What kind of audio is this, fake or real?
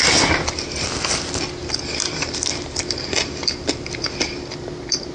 real